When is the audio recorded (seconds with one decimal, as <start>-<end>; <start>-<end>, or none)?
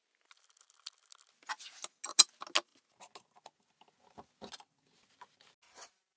0.0-6.2